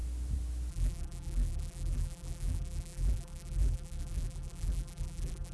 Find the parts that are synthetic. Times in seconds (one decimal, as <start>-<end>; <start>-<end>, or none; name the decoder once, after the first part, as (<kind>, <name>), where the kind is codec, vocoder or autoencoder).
0.7-5.5 (vocoder, BigVGAN v2)